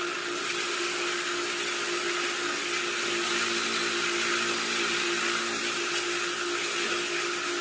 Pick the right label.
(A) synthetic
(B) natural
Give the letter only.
B